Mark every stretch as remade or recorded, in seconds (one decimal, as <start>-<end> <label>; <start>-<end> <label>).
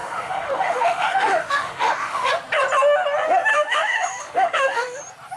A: 0.0-2.3 remade; 2.3-3.5 recorded; 3.5-5.0 remade; 5.0-5.4 recorded